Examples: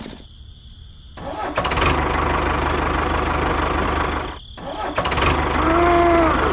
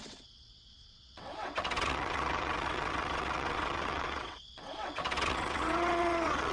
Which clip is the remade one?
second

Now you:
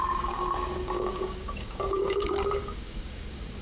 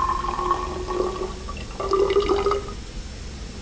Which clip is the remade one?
first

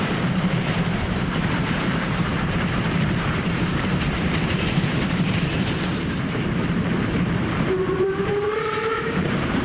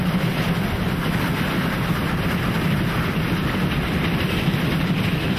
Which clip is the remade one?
first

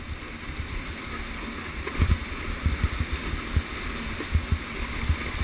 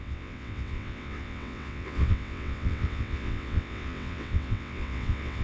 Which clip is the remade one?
second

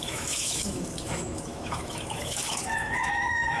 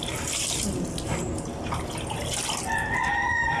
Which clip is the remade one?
first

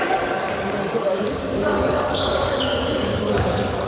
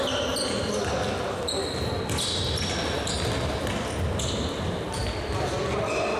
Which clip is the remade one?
first